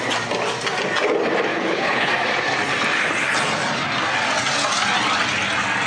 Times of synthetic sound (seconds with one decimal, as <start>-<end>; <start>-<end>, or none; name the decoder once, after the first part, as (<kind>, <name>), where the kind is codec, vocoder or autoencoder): 1.5-2.1 (codec, HILCodec)